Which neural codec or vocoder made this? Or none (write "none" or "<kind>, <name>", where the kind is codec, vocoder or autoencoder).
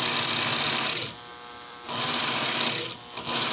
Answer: none